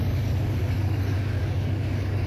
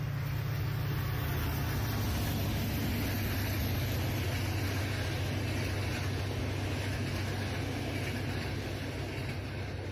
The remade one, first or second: first